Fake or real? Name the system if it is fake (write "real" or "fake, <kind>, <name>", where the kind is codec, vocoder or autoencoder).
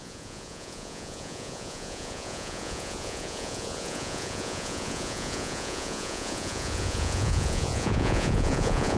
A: fake, vocoder, Vocos